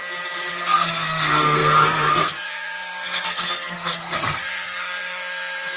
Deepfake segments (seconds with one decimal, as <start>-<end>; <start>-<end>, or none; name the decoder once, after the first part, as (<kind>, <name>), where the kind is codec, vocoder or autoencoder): 0.5-5.8 (codec, SNAC)